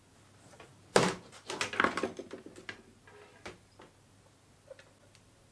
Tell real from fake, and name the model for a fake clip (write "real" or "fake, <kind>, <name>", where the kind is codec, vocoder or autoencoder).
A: real